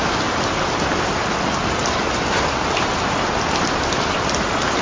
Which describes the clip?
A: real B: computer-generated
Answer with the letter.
A